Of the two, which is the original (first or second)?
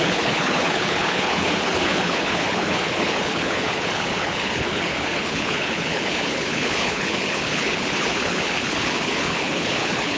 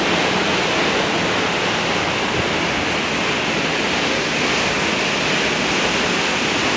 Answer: second